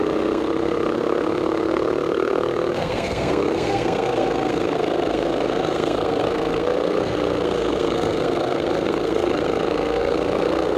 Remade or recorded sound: remade